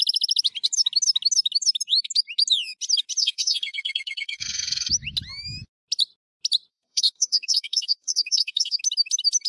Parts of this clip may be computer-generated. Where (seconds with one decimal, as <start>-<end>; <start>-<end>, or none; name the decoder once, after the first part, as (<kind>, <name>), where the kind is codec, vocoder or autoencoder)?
3.2-4.9 (codec, SNAC); 6.7-8.8